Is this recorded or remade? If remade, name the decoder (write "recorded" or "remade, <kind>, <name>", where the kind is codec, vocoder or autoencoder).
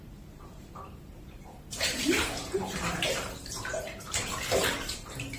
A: remade, vocoder, BigVGAN v2